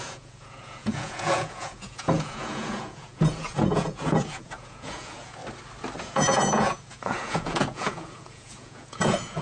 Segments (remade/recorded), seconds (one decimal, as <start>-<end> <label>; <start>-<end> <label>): 0.0-5.4 remade; 5.4-6.0 recorded; 6.0-9.4 remade